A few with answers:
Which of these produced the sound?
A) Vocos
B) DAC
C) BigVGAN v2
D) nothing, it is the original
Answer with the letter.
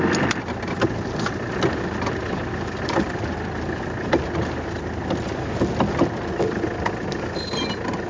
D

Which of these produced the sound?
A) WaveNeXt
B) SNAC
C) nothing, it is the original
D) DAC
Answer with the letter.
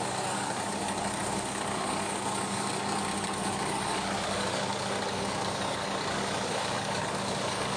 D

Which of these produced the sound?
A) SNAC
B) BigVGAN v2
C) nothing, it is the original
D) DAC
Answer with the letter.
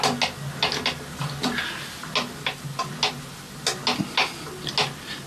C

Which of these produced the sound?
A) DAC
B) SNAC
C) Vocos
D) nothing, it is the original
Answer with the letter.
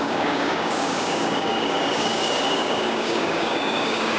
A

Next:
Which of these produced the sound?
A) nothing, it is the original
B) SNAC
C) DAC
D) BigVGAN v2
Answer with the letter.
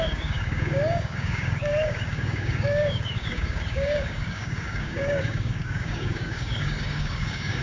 C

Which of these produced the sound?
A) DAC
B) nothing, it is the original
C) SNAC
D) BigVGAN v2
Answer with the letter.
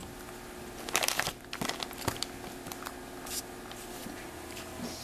B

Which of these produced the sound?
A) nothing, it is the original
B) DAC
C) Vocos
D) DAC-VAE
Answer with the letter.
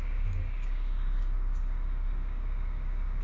B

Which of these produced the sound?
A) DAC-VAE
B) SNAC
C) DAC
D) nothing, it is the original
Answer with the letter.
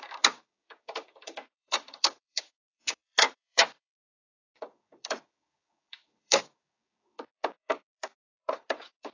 C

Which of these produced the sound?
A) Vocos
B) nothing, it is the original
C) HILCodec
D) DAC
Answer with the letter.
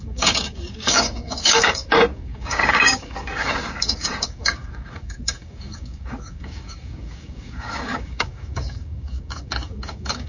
D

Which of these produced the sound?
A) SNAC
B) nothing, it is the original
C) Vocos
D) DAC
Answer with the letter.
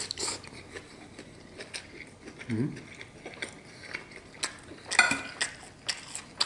B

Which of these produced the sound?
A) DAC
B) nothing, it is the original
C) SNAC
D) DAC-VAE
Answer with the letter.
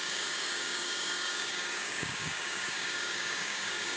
A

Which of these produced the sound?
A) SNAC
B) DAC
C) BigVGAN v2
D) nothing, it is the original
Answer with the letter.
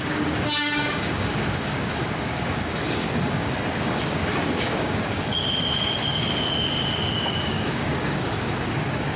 B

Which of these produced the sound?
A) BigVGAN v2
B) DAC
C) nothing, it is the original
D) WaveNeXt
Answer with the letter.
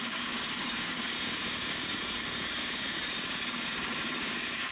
B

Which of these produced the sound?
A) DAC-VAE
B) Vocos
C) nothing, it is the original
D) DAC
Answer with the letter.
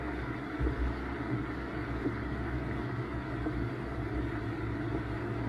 D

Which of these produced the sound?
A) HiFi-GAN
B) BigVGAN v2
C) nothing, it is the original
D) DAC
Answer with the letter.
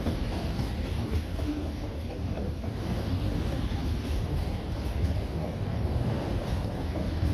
D